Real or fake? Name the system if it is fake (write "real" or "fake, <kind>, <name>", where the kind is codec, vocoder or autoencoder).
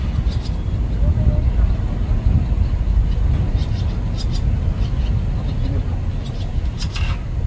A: real